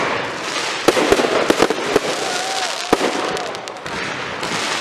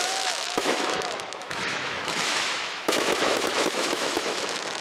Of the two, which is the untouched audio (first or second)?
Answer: first